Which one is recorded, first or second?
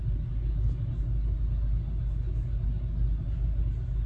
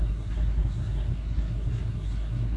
first